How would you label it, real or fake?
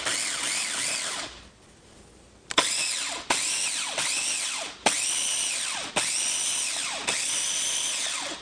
real